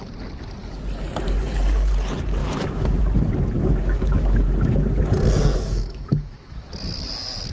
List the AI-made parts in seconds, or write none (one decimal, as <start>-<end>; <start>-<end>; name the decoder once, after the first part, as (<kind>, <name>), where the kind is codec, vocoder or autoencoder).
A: 2.4-3.0 (autoencoder, DAC-VAE); 3.6-4.4; 5.5-6.7

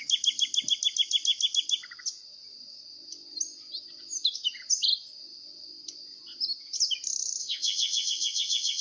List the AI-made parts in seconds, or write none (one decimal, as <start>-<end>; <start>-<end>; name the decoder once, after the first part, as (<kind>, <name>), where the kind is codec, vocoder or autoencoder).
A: 7.4-8.8 (vocoder, WaveNeXt)